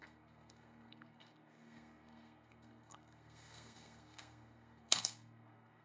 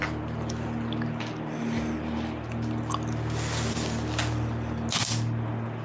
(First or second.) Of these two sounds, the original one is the second